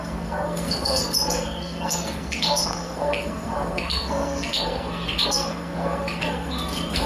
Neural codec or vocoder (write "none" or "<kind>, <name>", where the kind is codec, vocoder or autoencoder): codec, SNAC